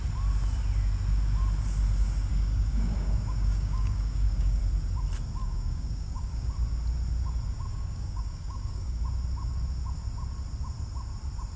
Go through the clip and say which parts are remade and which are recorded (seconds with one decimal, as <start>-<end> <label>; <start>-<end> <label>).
0.0-2.3 recorded; 2.3-4.6 remade; 4.6-5.4 recorded; 5.4-6.5 remade; 6.5-7.7 recorded; 7.7-9.0 remade; 9.0-11.6 recorded